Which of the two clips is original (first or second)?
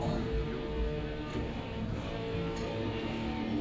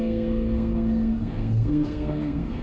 first